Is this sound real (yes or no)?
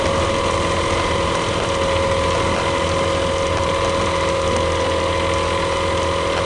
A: yes